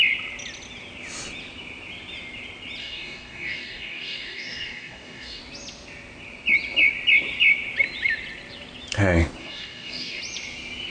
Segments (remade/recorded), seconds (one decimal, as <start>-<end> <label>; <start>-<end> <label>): 0.0-2.8 recorded; 2.8-5.4 remade; 5.4-9.4 recorded; 9.4-10.2 remade; 10.2-10.9 recorded